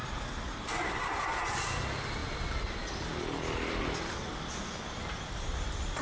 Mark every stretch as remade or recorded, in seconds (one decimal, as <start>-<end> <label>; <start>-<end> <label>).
0.0-6.0 recorded